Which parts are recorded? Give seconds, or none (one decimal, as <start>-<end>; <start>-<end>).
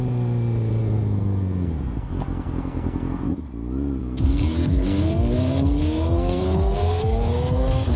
0.0-0.8; 3.4-4.0